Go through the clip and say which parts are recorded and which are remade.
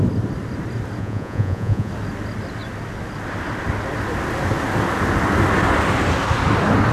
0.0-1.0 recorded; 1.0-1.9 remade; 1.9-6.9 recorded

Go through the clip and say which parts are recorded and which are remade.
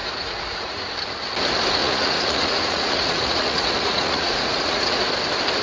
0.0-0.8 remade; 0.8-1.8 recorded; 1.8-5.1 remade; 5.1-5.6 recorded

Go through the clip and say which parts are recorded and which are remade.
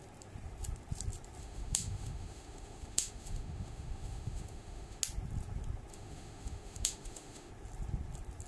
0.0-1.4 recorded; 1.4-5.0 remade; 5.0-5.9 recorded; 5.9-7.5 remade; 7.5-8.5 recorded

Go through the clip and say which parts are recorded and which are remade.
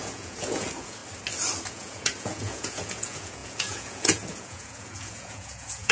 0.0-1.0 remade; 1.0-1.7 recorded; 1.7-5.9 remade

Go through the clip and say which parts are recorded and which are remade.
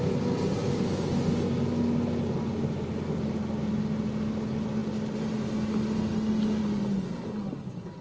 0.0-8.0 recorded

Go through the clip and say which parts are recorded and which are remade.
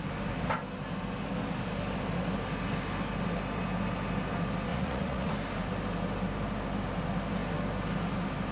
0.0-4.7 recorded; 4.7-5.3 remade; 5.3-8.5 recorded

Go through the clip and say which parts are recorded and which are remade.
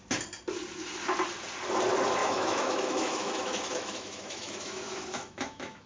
0.0-2.2 recorded; 2.2-5.9 remade